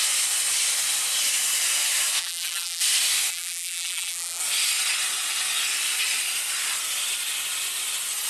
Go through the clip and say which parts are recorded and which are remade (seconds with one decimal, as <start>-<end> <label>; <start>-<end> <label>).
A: 0.0-2.2 recorded; 2.2-2.8 remade; 2.8-3.3 recorded; 3.3-4.4 remade; 4.4-8.3 recorded